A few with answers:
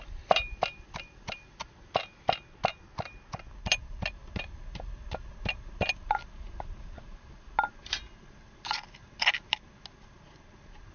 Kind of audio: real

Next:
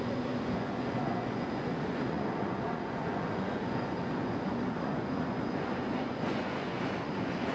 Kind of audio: fake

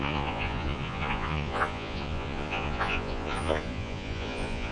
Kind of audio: fake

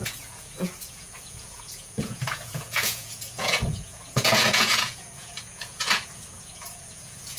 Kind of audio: fake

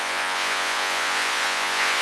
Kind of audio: fake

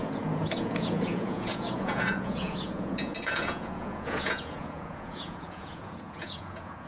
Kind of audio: fake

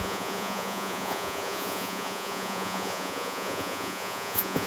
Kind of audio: fake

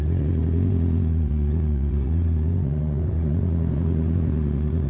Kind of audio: fake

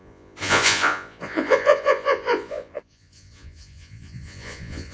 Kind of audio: fake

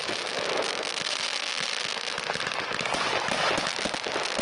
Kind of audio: real